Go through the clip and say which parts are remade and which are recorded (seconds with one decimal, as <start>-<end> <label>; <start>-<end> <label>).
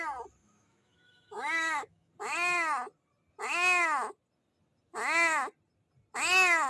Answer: 0.0-0.4 recorded; 0.4-2.1 remade; 2.1-6.7 recorded